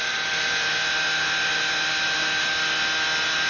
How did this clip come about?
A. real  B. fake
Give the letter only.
A